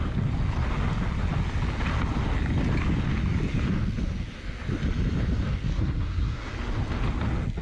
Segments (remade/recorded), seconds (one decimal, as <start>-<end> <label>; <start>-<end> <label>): 0.0-5.7 recorded; 5.7-6.5 remade; 6.5-7.6 recorded